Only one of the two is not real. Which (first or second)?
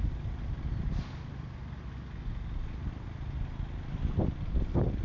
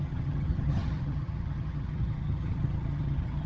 second